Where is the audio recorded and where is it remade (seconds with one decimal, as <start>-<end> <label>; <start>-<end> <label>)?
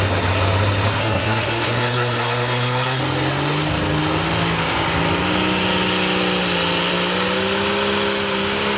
0.0-1.0 recorded; 1.0-3.0 remade; 3.0-8.8 recorded